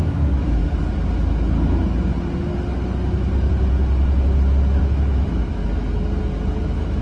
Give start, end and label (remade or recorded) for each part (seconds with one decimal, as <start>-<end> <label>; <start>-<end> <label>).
0.0-0.6 remade; 0.6-4.8 recorded; 4.8-5.6 remade; 5.6-6.6 recorded; 6.6-7.0 remade